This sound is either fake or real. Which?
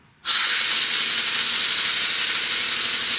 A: real